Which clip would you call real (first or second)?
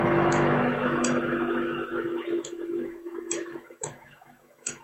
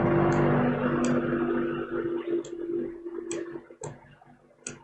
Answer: second